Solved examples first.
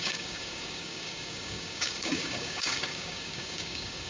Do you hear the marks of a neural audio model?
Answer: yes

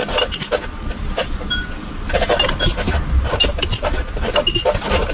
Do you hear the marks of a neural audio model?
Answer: no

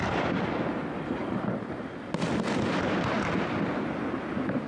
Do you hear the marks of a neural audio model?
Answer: no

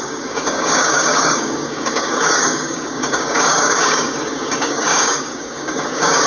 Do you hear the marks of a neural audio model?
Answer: yes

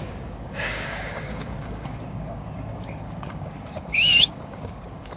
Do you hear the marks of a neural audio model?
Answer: yes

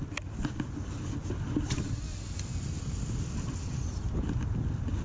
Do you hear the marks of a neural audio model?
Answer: no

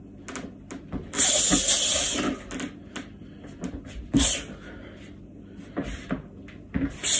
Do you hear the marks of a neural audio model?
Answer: no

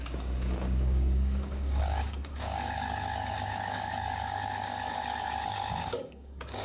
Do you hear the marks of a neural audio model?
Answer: yes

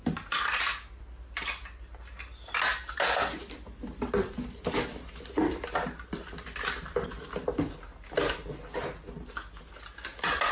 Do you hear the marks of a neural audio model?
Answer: no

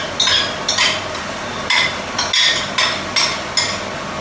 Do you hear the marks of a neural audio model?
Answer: no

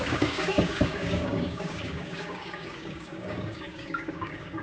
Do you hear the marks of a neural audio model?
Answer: yes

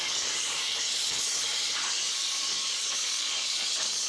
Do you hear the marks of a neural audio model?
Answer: yes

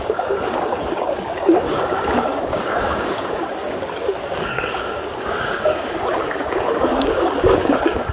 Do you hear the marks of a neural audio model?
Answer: yes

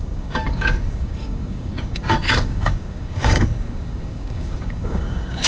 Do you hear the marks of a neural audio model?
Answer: yes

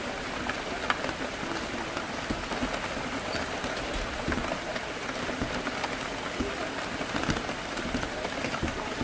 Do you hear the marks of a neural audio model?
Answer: no